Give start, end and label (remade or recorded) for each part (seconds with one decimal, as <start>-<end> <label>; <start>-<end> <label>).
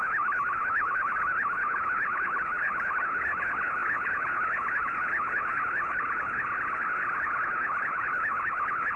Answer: 0.0-9.0 remade